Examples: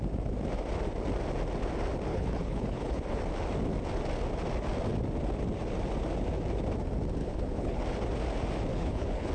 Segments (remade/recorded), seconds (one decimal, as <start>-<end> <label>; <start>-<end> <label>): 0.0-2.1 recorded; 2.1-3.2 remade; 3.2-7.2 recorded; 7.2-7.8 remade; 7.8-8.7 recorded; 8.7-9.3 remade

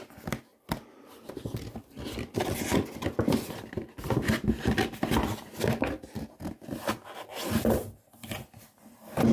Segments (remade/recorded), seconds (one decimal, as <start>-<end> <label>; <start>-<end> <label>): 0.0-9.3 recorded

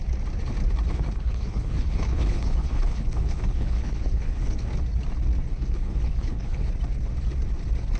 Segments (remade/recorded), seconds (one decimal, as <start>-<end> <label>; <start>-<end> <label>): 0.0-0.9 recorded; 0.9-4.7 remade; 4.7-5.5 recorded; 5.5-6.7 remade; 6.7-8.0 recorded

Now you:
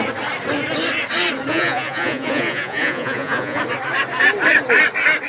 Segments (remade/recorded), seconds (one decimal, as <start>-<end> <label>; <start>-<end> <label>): 0.0-1.5 recorded; 1.5-3.6 remade; 3.6-5.3 recorded

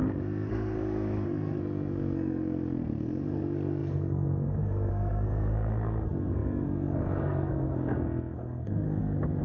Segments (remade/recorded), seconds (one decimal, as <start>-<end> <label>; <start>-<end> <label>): 0.0-9.4 remade

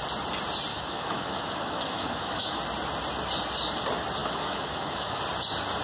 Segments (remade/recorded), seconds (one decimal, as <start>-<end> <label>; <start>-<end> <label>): 0.0-0.7 recorded; 0.7-2.6 remade; 2.6-4.2 recorded; 4.2-5.2 remade; 5.2-5.8 recorded

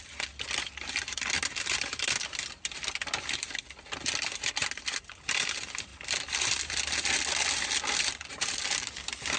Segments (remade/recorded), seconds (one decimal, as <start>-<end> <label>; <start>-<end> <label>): 0.0-5.9 recorded; 5.9-6.8 remade; 6.8-9.4 recorded